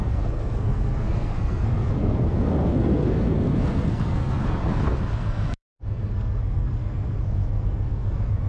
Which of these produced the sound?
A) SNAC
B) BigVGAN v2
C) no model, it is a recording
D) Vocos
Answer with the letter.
A